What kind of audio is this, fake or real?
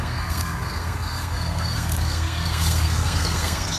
fake